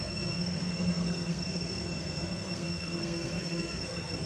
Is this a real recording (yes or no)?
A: no